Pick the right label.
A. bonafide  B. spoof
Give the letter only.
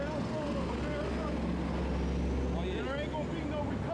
A